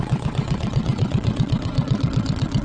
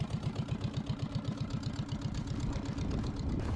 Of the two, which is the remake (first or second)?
first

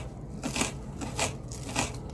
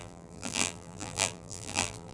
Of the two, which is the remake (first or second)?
second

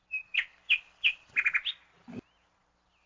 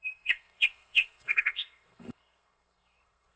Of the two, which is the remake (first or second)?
second